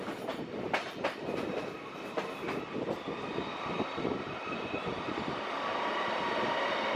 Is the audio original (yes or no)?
yes